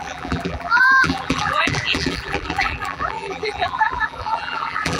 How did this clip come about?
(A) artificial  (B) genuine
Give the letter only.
A